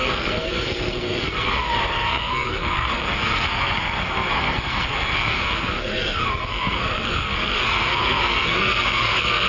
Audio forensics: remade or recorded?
remade